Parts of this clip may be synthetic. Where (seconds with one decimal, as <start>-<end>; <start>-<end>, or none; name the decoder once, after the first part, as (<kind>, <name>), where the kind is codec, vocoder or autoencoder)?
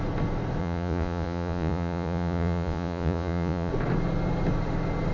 0.6-3.7 (vocoder, Vocos)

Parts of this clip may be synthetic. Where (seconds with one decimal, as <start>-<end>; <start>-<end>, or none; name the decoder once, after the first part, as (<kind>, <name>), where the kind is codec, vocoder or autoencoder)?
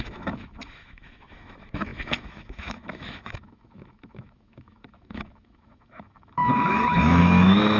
0.0-7.8 (autoencoder, DAC-VAE)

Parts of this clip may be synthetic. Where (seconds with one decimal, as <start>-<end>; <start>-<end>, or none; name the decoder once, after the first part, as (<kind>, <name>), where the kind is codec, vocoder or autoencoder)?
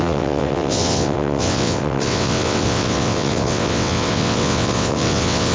0.0-5.5 (vocoder, WaveNeXt)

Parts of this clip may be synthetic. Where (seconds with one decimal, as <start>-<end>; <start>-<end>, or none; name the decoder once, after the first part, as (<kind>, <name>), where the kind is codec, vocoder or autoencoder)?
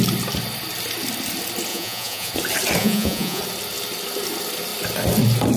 1.7-2.3 (vocoder, Vocos); 2.8-3.4